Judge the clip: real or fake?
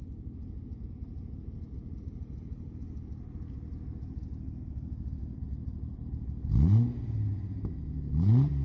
real